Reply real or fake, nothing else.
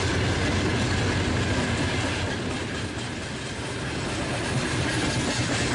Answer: real